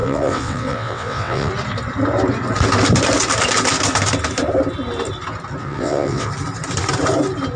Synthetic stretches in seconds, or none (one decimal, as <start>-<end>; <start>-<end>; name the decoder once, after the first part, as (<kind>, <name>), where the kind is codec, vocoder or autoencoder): 0.0-1.5 (vocoder, WaveNeXt); 5.6-6.3